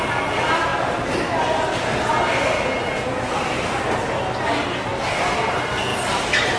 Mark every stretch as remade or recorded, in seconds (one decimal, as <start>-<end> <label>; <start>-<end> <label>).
0.0-6.6 recorded